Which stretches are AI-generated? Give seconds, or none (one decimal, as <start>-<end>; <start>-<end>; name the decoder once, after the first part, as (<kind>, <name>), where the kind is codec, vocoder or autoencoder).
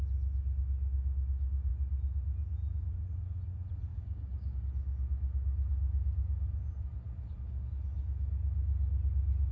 3.9-4.6 (codec, DAC)